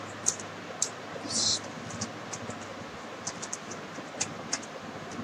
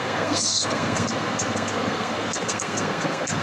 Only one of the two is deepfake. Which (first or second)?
second